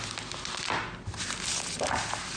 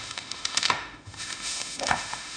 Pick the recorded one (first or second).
first